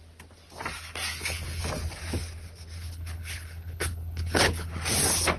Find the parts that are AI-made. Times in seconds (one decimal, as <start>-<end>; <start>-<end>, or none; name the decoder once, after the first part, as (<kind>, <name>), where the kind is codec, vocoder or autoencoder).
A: 1.1-1.6 (codec, HILCodec); 2.8-4.7